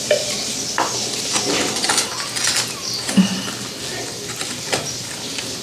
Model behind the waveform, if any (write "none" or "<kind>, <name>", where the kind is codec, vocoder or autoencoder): none